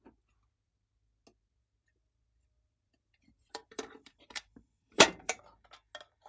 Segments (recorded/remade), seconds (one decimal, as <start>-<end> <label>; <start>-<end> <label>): 0.0-1.6 recorded; 1.6-5.4 remade; 5.4-6.3 recorded